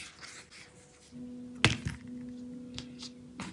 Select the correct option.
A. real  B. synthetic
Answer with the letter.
A